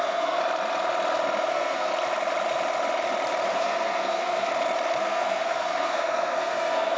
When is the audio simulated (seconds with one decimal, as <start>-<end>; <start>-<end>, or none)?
0.0-0.4; 1.5-1.9; 3.5-4.5; 5.0-7.0